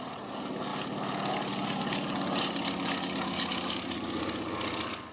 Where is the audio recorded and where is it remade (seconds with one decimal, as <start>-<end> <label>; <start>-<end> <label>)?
0.0-5.1 recorded